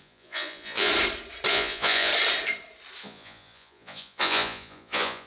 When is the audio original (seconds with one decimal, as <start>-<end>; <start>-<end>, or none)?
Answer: 0.9-1.5; 2.1-3.0